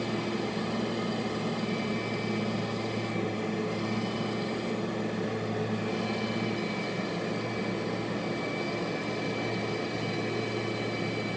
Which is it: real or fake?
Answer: real